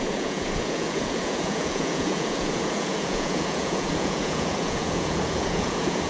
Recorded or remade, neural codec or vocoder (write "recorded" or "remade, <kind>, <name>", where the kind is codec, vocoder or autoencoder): remade, vocoder, Vocos